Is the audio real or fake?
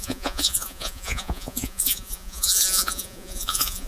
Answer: fake